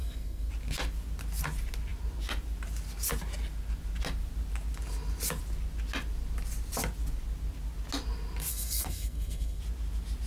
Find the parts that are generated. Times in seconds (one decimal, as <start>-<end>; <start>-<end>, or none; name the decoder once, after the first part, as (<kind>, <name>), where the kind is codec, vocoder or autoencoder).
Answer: 0.0-0.5 (codec, SNAC); 8.5-9.6